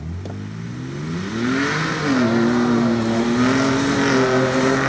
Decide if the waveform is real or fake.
real